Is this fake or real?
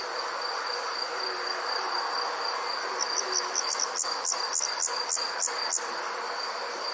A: real